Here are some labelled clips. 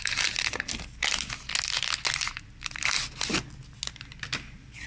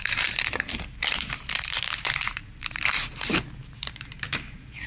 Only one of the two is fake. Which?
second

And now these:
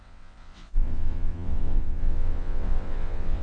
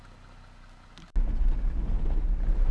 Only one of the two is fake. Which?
first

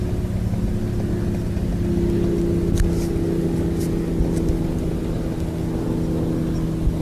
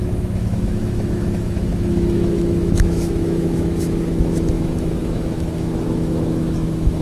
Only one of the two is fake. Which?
second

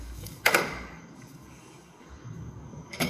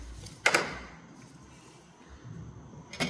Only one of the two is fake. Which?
first